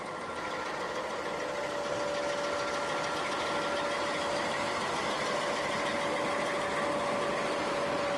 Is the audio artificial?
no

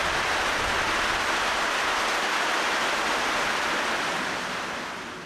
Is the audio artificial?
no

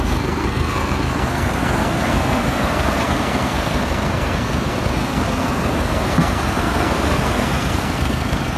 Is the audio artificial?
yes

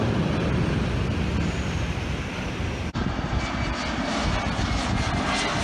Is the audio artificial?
no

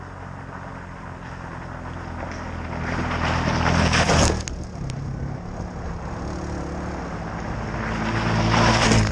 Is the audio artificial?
no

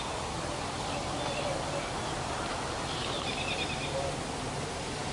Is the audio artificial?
no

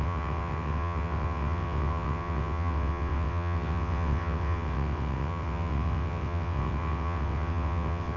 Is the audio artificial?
yes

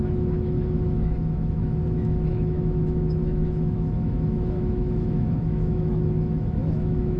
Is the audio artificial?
yes